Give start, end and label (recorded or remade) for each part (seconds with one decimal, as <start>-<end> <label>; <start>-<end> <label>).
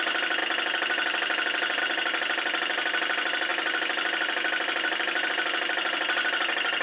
0.0-6.8 recorded